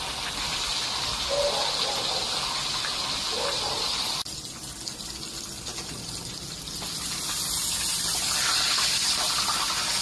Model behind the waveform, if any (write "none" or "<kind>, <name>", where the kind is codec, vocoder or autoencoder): none